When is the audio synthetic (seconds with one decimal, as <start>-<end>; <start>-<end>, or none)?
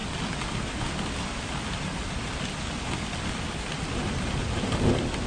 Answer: none